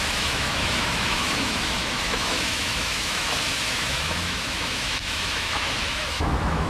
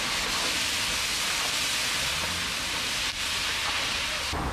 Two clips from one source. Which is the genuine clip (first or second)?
second